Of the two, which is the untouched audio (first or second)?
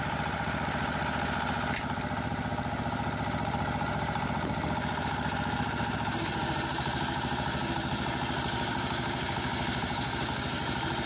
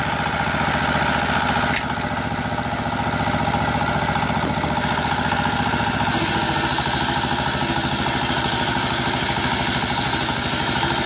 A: second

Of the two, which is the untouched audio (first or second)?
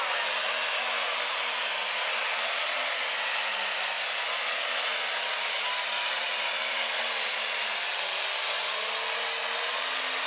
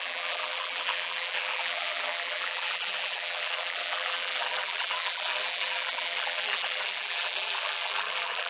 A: first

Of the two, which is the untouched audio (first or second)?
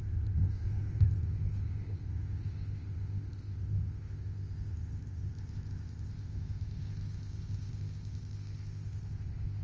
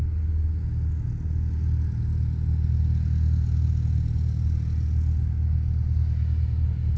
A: second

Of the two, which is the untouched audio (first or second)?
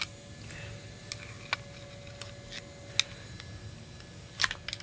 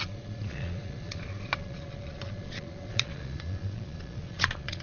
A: first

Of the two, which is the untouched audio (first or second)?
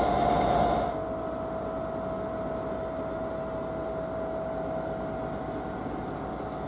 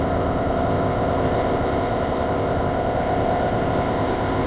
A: first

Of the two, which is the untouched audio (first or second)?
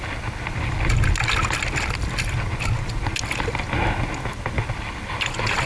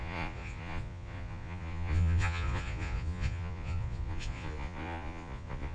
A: first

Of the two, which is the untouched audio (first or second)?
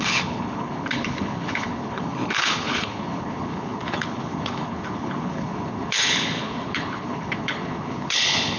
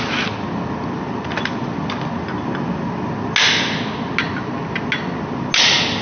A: second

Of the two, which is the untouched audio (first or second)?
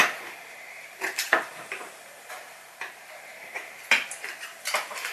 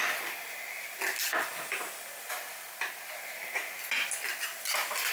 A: second